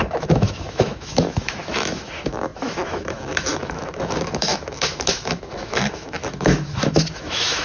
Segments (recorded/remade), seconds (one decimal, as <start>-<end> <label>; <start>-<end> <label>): 0.0-7.6 remade